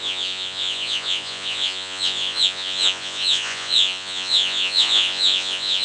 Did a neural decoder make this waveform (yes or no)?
yes